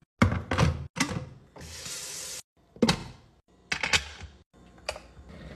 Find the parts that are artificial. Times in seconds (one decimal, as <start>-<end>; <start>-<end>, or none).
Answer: none